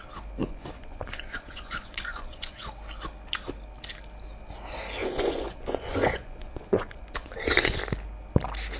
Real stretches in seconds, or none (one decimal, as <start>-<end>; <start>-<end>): 0.0-0.4; 2.7-5.0; 7.8-8.8